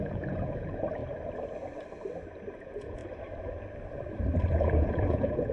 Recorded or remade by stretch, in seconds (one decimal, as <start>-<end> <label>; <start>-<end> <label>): 0.0-1.0 remade; 1.0-2.6 recorded; 2.6-3.0 remade; 3.0-4.5 recorded; 4.5-5.5 remade